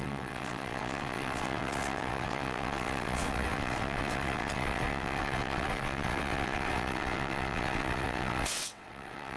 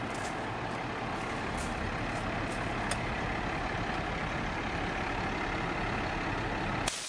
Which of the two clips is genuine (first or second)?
second